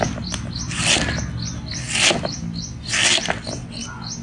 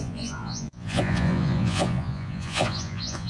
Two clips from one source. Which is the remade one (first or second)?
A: second